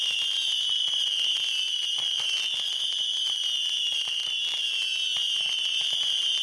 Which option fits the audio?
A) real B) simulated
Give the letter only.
A